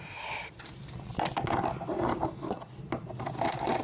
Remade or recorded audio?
recorded